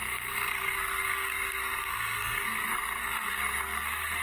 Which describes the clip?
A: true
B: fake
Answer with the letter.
B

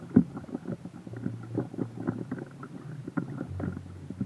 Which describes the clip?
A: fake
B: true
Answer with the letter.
B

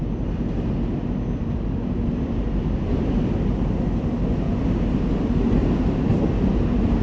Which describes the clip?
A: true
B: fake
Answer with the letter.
A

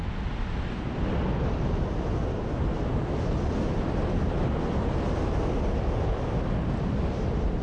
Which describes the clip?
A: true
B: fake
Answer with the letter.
A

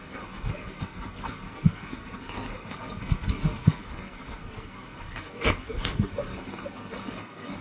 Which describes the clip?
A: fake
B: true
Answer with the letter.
A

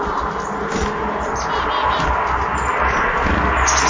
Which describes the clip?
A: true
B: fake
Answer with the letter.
A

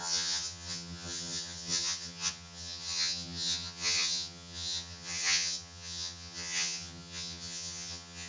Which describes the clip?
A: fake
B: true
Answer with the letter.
A